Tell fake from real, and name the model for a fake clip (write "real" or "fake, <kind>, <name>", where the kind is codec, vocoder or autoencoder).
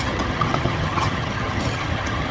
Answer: fake, vocoder, HiFi-GAN